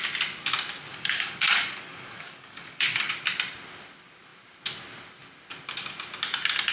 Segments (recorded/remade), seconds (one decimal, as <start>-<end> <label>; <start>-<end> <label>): 0.0-0.9 recorded; 0.9-3.1 remade; 3.1-6.7 recorded

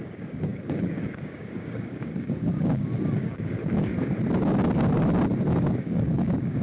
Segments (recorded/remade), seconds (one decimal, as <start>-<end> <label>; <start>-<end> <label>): 0.0-3.9 remade; 3.9-5.8 recorded; 5.8-6.6 remade